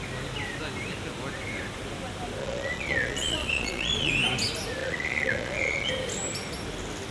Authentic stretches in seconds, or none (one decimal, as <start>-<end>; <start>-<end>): 0.0-2.4; 4.1-4.8; 5.9-7.1